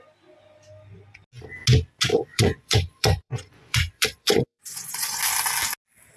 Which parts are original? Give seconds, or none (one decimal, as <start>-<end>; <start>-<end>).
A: 0.0-2.1; 5.2-6.2